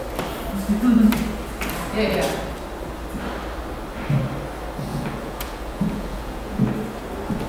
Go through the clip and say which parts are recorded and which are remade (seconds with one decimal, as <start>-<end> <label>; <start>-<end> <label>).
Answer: 0.0-4.9 recorded; 4.9-6.6 remade; 6.6-7.5 recorded